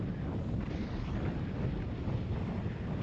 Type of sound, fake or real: real